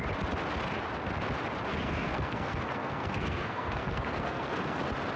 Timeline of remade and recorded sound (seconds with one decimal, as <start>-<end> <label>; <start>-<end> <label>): 0.0-1.7 recorded; 1.7-4.8 remade; 4.8-5.2 recorded